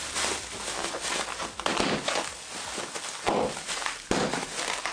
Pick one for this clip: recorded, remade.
recorded